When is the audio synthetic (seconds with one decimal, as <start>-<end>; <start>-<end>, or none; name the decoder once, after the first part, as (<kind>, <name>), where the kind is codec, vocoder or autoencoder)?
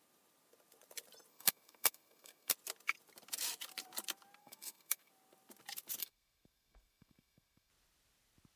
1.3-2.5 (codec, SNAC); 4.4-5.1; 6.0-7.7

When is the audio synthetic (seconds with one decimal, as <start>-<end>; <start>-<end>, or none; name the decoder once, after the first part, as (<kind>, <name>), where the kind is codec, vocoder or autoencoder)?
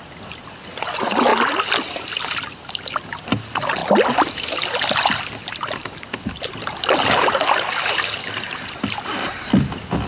none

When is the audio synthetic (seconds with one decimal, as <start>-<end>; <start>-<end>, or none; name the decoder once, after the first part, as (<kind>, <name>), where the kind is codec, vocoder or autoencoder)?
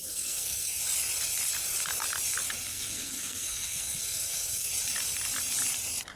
0.0-0.8 (codec, SNAC); 2.7-4.7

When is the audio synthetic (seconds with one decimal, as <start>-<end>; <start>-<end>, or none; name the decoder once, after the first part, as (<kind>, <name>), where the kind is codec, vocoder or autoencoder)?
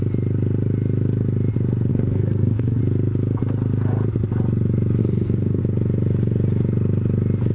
1.9-2.8 (codec, SNAC); 5.0-5.6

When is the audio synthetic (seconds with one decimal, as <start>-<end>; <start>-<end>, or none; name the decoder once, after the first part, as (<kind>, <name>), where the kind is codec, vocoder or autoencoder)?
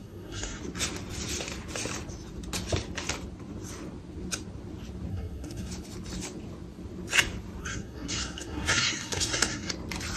0.0-0.6 (codec, SNAC); 5.1-5.7; 7.6-9.7